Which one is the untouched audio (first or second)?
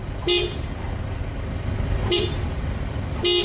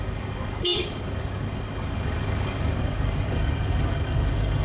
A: first